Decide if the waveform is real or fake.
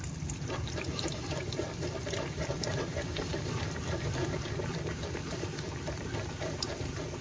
fake